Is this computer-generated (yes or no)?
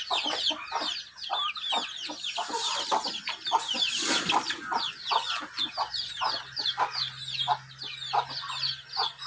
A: no